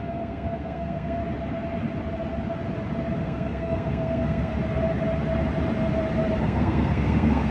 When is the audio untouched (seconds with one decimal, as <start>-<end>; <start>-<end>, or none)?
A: 1.2-3.2; 4.5-6.4